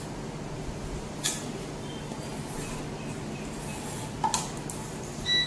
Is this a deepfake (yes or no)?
no